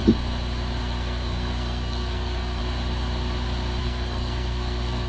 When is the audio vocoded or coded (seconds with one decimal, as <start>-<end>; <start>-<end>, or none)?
0.8-2.6; 3.8-5.1